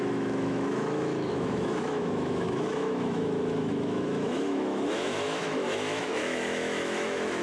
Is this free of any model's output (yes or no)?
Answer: no